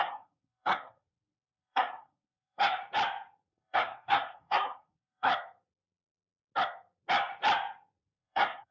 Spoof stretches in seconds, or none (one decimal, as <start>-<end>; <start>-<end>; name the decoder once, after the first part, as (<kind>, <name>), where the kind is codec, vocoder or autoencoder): 0.0-2.8 (codec, SNAC); 3.5-5.3; 8.0-8.7